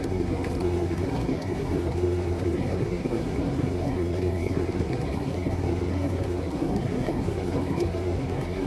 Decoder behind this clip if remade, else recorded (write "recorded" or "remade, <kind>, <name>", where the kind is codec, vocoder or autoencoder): remade, codec, SNAC